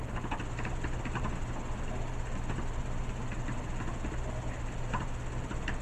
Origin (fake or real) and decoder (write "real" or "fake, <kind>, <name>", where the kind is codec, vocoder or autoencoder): real